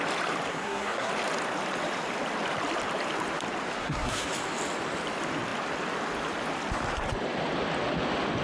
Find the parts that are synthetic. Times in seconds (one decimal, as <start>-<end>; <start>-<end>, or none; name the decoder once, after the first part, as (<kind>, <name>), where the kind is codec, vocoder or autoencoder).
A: 0.5-1.1 (codec, SNAC); 3.8-4.3